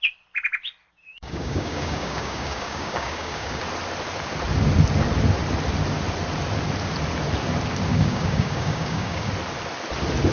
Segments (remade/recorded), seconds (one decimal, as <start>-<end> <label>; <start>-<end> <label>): 0.0-1.0 recorded; 1.0-3.6 remade; 3.6-7.9 recorded; 7.9-9.3 remade; 9.3-10.3 recorded